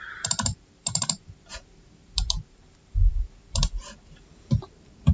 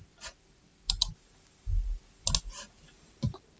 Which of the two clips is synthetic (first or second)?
first